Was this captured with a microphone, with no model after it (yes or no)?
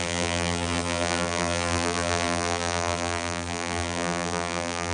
no